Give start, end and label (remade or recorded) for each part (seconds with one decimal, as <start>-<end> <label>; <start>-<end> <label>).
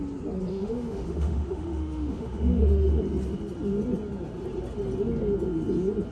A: 0.0-0.5 recorded; 0.5-3.0 remade; 3.0-6.1 recorded